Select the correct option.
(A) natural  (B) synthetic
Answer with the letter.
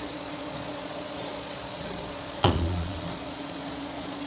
B